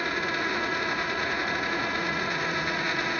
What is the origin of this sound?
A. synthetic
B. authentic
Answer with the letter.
A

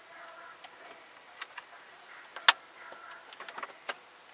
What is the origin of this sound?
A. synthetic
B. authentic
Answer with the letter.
B